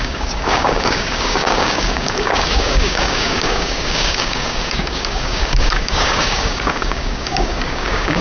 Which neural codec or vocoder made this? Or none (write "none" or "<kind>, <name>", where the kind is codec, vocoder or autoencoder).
codec, DAC